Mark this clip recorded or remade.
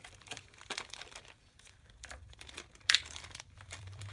remade